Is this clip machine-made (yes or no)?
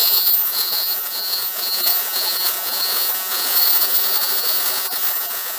yes